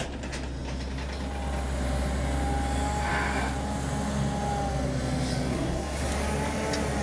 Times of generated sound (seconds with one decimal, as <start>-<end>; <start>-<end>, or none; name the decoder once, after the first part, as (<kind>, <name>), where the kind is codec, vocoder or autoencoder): 5.5-6.1 (codec, SNAC)